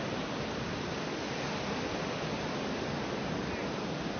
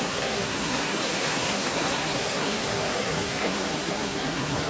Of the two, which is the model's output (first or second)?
second